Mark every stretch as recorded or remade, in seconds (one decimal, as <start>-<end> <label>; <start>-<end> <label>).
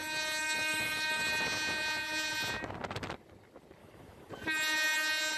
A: 0.0-0.4 recorded; 0.4-1.2 remade; 1.2-3.8 recorded; 3.8-4.3 remade; 4.3-5.4 recorded